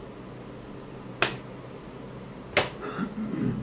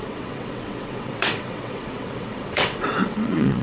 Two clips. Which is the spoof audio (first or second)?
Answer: second